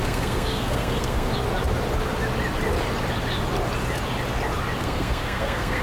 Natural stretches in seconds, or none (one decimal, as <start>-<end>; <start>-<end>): 1.3-4.8